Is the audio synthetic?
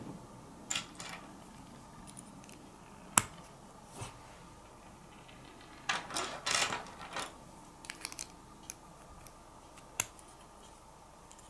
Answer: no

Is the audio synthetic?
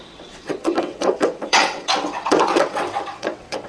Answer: yes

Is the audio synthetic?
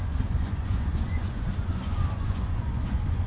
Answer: yes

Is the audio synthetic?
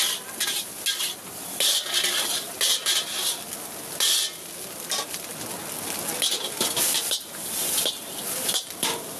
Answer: no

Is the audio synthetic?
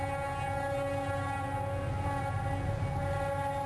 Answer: no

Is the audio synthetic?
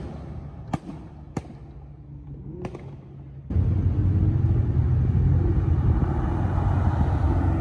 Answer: no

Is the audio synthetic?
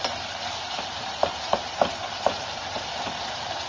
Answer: yes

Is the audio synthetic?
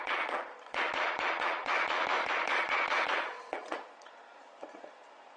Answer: yes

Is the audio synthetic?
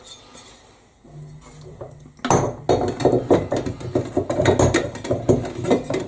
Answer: no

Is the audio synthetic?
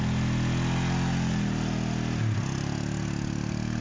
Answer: no